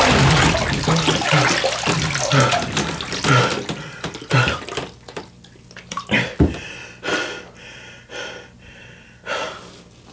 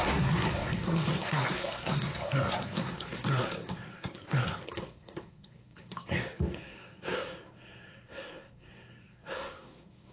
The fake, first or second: second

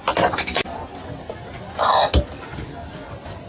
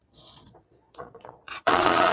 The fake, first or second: second